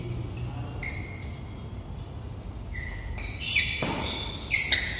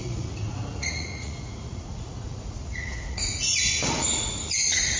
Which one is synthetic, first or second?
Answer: second